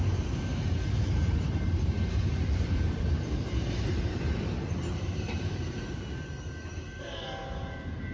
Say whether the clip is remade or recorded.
remade